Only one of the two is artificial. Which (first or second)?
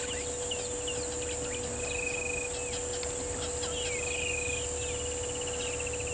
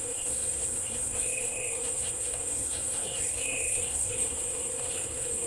second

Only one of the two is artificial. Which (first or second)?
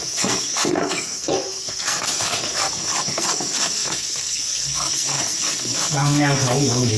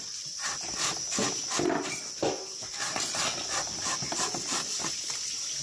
first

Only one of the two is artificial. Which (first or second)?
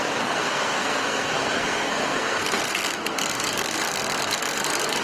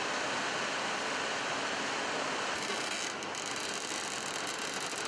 first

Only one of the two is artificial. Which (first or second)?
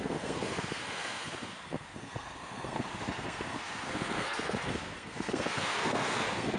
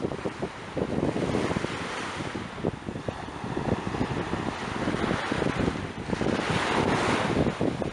first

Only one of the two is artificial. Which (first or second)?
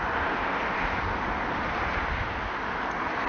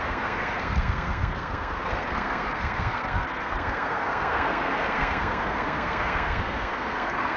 second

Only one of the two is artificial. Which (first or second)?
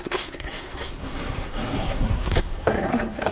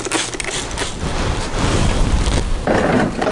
first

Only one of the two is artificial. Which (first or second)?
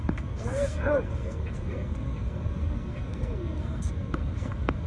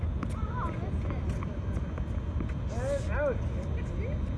first